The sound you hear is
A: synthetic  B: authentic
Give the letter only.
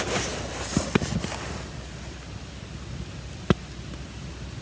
B